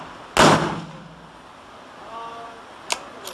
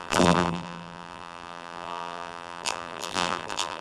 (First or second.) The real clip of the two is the first